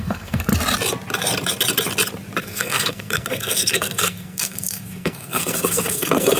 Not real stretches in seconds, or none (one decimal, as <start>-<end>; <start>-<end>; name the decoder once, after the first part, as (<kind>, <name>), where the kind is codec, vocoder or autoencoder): 0.0-0.5 (codec, SNAC); 2.4-6.4

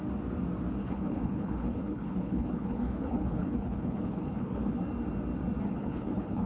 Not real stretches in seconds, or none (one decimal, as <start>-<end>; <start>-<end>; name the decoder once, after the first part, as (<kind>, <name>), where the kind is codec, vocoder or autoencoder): 0.8-4.7 (codec, HILCodec); 5.7-6.5

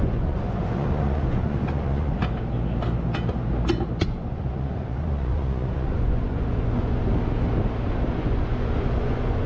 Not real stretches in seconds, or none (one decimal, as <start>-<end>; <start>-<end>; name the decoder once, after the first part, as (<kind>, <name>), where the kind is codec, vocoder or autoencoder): 0.0-2.2 (vocoder, Vocos); 4.0-7.1; 8.2-9.5